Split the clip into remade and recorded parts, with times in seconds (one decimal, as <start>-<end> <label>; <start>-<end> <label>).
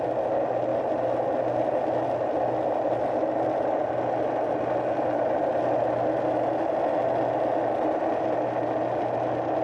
0.0-9.6 recorded